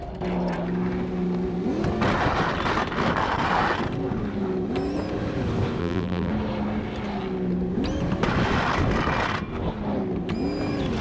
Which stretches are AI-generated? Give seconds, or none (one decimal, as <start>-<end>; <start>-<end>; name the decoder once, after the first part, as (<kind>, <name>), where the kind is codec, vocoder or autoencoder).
5.8-6.3 (vocoder, BigVGAN v2)